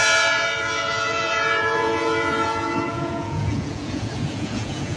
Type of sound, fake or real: fake